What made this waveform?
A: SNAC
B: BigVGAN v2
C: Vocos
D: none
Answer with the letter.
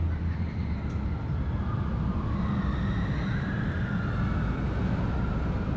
D